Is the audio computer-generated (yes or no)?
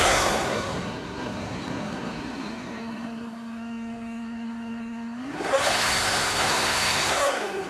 yes